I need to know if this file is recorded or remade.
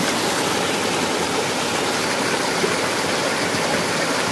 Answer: recorded